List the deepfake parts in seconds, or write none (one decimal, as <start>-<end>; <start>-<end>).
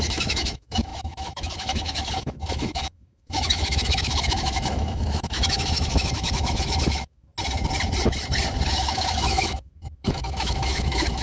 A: 0.0-7.3; 8.7-11.2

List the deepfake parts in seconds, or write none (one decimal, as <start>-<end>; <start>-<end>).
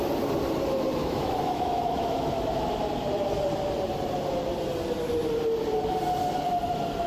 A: 1.0-2.7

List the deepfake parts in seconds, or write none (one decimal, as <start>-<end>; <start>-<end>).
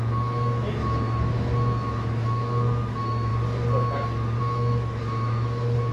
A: 0.0-3.3; 4.4-5.9